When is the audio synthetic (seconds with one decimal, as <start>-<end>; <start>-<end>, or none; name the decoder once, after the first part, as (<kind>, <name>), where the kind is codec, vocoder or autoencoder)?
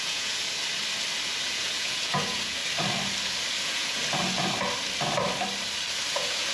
0.0-0.6 (vocoder, Vocos); 1.4-2.6; 3.6-4.0; 6.1-6.5